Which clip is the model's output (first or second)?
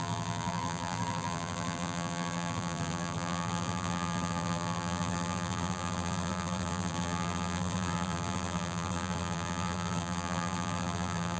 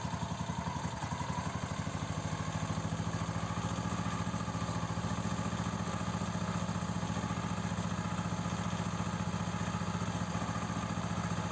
first